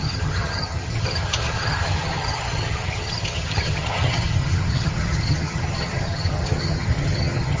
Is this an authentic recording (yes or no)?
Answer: no